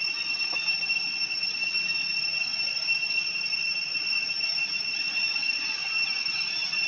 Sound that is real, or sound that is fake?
real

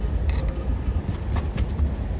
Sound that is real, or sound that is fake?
real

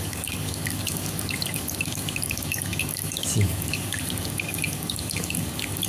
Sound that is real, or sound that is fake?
fake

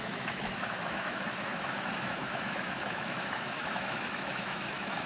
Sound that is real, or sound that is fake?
fake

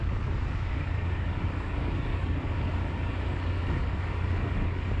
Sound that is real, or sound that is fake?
fake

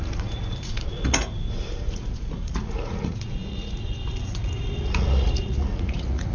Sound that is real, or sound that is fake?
fake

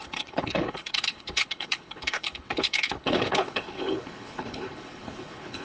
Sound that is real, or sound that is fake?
fake